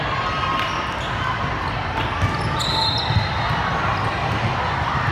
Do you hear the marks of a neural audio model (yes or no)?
no